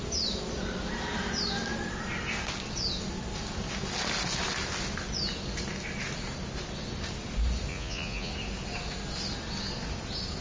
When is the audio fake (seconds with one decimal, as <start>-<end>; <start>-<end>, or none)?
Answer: 7.7-8.3